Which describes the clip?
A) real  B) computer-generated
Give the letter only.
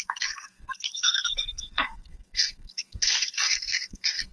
B